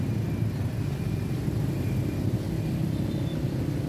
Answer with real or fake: real